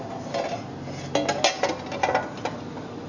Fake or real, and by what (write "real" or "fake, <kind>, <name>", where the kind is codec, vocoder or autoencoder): real